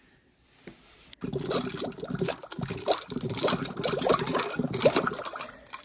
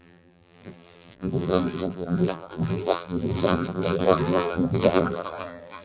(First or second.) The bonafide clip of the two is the first